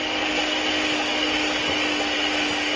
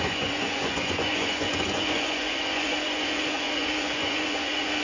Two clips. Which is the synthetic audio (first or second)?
second